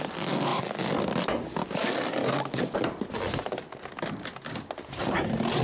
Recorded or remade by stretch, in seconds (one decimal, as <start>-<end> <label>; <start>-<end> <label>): 0.0-5.6 recorded